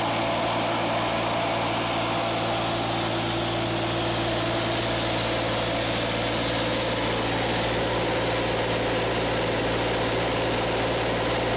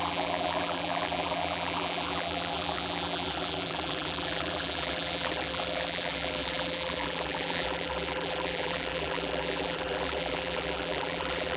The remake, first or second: second